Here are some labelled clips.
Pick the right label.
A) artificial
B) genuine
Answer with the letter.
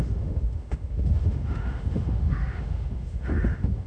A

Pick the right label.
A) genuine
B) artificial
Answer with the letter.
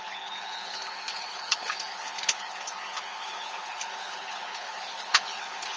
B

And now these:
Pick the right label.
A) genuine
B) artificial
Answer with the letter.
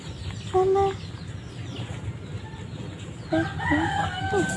A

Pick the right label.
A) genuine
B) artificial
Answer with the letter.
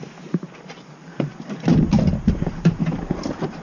B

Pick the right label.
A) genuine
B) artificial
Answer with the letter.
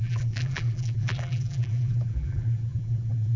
B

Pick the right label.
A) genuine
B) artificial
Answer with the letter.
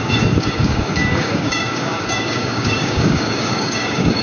B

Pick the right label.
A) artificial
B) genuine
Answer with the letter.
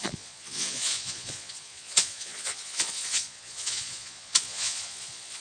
A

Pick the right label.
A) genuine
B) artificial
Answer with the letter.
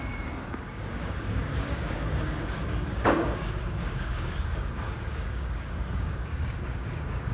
B